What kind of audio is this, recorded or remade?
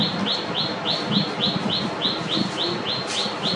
recorded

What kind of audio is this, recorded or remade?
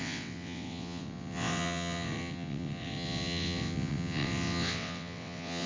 remade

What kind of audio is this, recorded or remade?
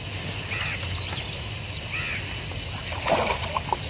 recorded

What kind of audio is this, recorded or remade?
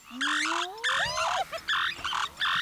recorded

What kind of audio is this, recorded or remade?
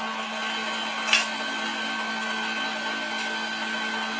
recorded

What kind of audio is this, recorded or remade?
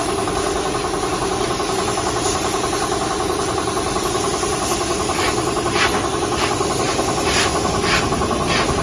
recorded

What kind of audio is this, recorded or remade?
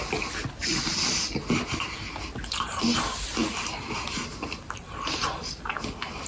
recorded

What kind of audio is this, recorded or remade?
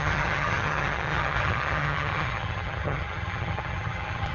remade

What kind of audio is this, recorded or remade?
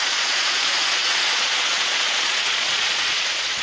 remade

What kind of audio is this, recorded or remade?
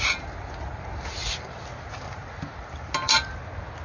recorded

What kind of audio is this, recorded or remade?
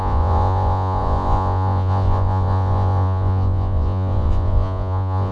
remade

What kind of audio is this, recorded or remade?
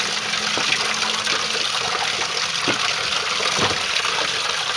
recorded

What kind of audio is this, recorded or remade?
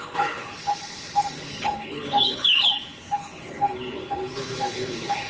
remade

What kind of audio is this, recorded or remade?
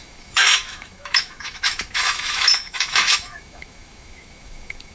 remade